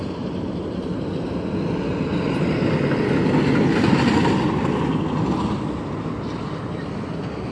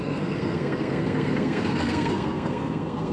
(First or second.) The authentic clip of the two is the first